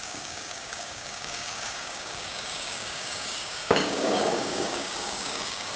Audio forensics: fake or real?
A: fake